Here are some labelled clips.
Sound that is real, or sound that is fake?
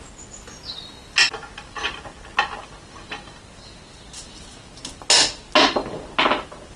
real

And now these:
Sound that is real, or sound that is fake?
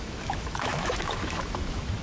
fake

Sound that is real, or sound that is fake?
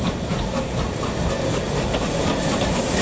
real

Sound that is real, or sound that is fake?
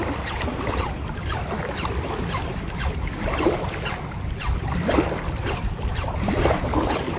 real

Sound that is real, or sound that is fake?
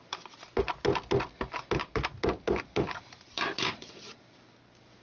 real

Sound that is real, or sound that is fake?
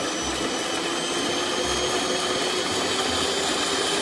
real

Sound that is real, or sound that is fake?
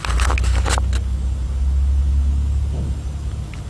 real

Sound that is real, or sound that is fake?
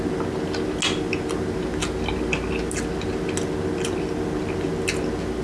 real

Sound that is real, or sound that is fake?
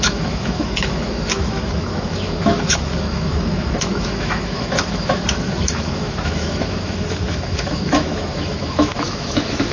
fake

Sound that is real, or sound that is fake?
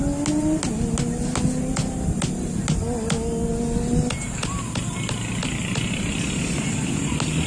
real